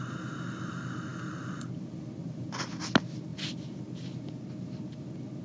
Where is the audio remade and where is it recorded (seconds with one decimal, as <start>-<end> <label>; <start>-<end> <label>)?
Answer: 0.0-5.4 recorded